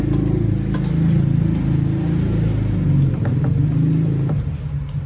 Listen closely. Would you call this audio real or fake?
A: real